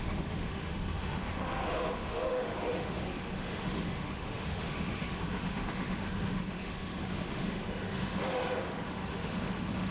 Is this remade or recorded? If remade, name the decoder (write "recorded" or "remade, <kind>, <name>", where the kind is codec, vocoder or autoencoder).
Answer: remade, autoencoder, DAC-VAE